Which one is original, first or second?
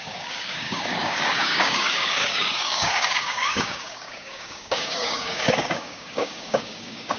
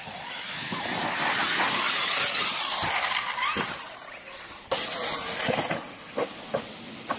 second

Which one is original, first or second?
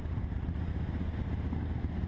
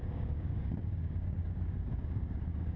first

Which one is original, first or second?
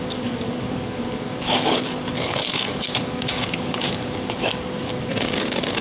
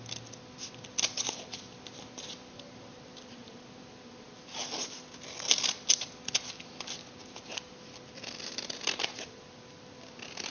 second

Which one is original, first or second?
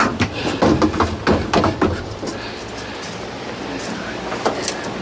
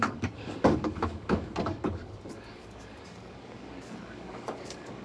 first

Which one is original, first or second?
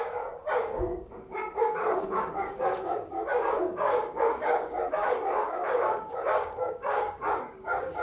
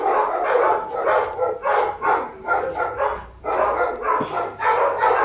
second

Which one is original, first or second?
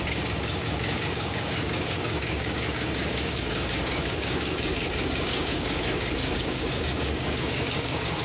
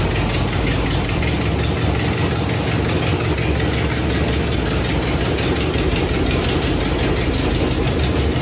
second